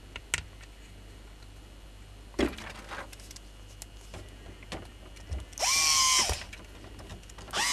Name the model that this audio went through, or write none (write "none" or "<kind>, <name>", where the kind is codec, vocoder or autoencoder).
none